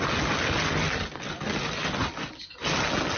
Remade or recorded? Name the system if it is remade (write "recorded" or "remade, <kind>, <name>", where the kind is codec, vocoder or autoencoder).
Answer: recorded